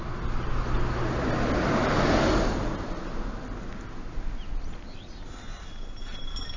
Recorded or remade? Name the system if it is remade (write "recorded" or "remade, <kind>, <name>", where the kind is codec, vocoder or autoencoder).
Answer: recorded